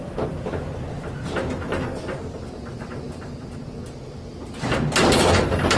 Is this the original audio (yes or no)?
yes